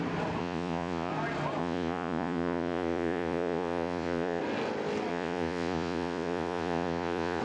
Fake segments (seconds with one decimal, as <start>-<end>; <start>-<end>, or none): 0.4-1.1; 1.6-4.4; 5.1-7.4